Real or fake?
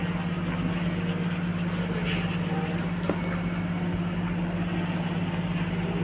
real